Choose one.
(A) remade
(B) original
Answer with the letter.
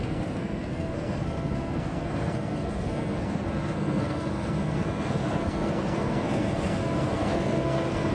A